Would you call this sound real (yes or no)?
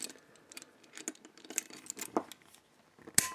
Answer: yes